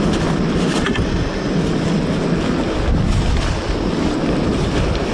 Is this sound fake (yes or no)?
no